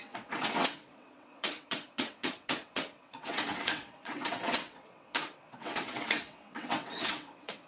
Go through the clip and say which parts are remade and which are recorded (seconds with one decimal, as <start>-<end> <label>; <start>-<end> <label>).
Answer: 0.0-7.7 remade